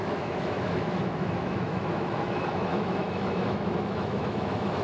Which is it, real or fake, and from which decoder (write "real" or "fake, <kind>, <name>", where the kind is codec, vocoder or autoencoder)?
fake, autoencoder, DAC-VAE